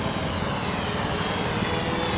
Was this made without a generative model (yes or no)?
yes